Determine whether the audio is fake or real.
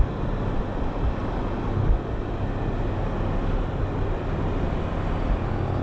real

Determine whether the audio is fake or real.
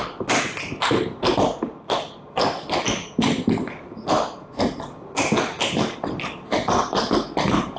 real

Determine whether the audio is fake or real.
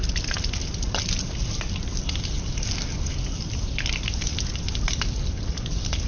real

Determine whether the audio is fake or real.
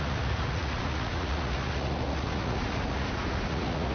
fake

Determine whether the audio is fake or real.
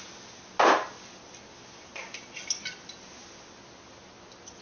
real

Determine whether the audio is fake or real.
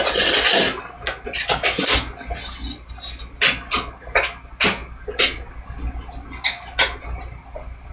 real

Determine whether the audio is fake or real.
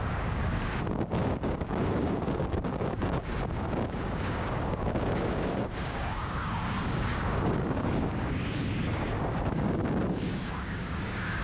fake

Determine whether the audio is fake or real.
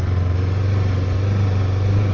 real